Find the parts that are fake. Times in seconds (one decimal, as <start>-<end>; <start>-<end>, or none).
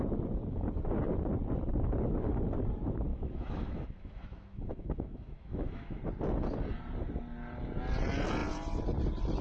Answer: 3.1-6.0